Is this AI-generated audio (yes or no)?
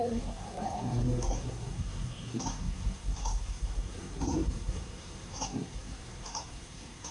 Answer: yes